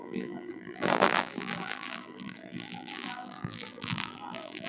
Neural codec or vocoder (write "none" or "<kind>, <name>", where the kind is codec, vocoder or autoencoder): vocoder, BigVGAN v2